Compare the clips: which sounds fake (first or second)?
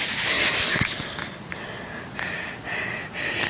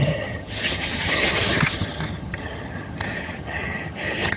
second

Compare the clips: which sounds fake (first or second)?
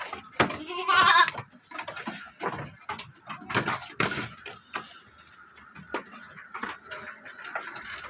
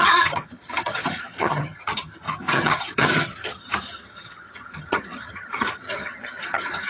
second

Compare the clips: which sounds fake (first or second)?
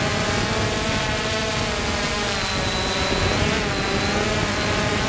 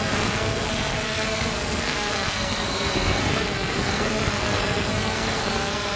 second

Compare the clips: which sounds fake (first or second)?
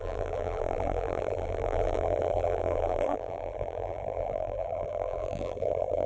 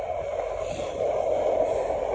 first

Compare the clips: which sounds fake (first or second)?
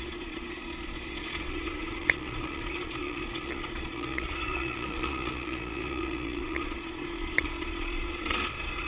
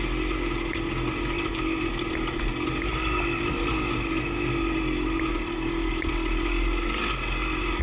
first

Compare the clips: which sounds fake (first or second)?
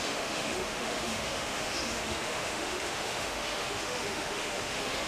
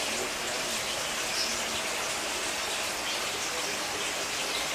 first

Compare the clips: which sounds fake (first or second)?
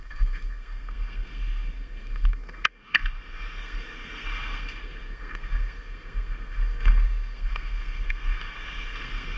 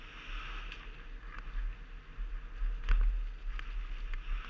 first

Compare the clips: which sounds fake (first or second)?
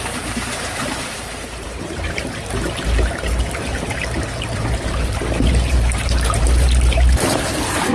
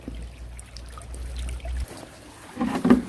first